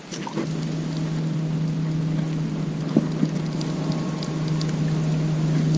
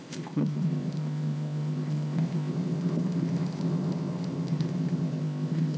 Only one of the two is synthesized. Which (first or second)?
second